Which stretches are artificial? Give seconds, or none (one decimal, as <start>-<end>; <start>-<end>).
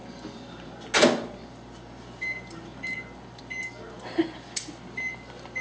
none